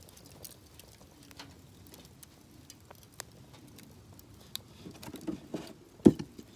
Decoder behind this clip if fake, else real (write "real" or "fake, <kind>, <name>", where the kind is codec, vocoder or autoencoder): real